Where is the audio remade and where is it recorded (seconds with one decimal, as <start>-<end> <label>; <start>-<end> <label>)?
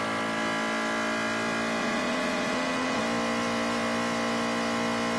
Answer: 0.0-1.8 recorded; 1.8-3.0 remade; 3.0-5.2 recorded